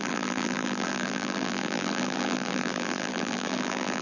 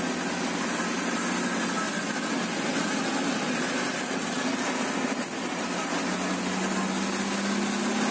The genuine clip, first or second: second